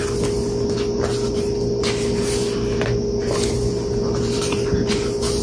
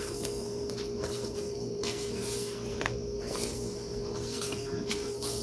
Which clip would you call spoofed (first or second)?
second